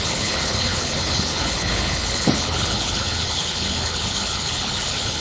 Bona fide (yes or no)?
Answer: no